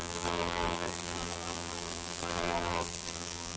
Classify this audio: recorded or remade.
remade